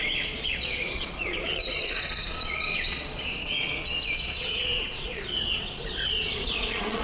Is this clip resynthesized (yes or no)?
yes